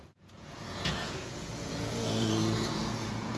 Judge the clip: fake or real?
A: fake